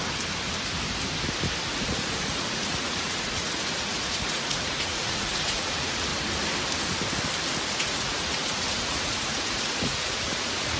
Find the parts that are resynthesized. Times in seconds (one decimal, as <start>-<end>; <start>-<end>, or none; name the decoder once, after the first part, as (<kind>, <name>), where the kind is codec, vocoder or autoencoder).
1.7-6.1 (vocoder, Vocos); 7.7-10.8